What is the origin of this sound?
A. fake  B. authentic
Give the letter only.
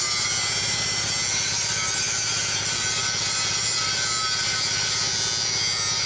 B